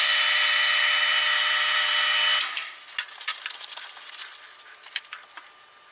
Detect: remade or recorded recorded